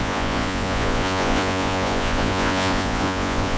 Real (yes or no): no